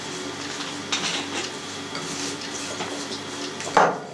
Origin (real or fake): real